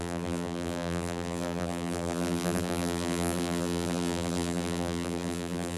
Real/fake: fake